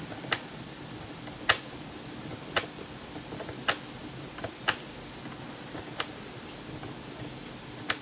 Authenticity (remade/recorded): recorded